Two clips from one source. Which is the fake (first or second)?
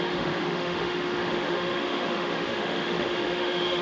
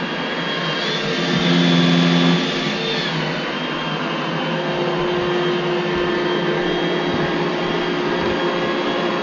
first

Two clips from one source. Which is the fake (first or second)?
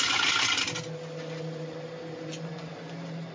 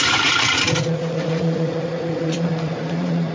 second